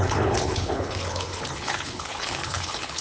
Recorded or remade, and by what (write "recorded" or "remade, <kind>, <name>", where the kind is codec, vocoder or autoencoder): remade, codec, HILCodec